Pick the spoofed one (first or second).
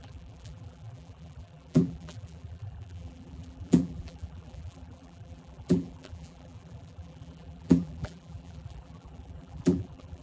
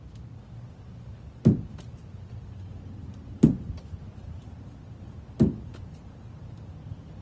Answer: first